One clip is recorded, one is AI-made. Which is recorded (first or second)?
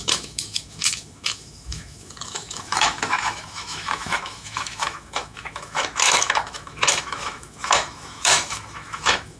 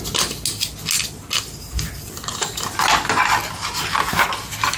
second